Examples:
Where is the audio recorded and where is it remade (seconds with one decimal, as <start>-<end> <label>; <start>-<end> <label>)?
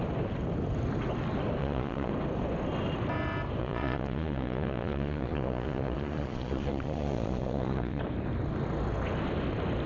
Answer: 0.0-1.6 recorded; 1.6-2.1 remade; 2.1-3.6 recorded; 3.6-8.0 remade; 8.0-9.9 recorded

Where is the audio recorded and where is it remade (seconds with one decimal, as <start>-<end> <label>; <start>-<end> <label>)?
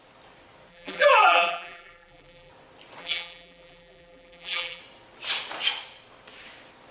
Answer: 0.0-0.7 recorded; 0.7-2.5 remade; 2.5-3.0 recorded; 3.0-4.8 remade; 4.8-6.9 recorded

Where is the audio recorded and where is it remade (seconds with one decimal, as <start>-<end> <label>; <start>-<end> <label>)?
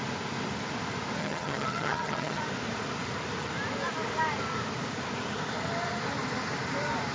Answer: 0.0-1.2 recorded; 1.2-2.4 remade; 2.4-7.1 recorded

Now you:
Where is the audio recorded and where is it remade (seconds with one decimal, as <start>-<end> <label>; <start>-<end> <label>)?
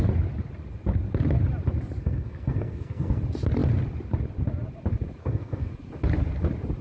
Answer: 0.0-2.0 recorded; 2.0-3.2 remade; 3.2-5.2 recorded; 5.2-5.7 remade; 5.7-6.8 recorded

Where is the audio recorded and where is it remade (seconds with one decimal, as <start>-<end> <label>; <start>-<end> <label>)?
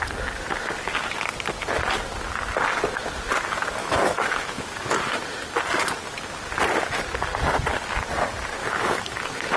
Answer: 0.0-3.8 recorded; 3.8-5.0 remade; 5.0-8.6 recorded; 8.6-9.6 remade